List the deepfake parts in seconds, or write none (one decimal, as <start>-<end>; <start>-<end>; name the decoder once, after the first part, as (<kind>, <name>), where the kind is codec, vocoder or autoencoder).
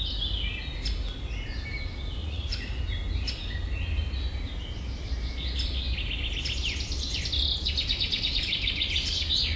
2.2-2.8 (vocoder, Vocos)